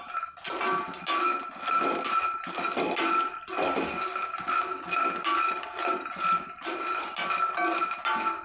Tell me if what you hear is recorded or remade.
recorded